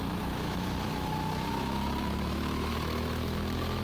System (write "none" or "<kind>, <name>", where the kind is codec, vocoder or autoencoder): autoencoder, DAC-VAE